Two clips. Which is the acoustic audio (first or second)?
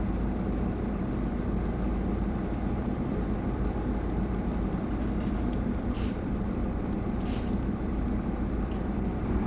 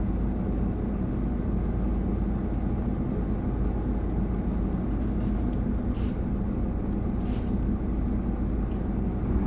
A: second